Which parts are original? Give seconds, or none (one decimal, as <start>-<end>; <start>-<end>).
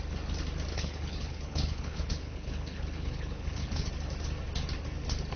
0.0-0.7; 3.9-5.4